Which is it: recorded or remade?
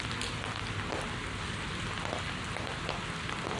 recorded